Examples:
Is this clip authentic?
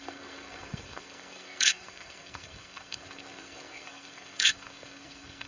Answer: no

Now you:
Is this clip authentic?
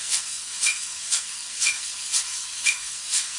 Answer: no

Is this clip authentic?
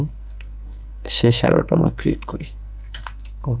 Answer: no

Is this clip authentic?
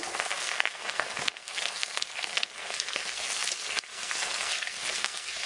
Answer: no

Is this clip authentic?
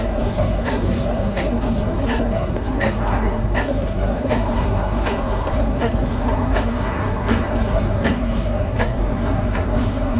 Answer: no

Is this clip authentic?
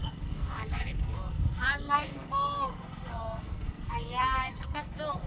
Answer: no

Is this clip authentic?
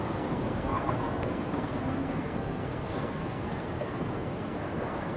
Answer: no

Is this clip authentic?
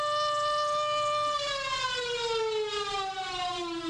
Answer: yes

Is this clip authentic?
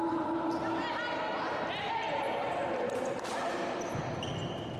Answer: yes